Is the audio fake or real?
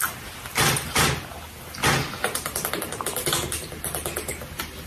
real